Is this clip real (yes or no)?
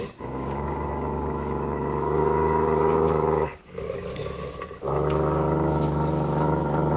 no